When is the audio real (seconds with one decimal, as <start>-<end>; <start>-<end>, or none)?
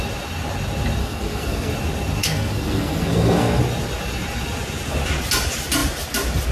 0.0-1.0; 1.7-2.2; 3.6-6.5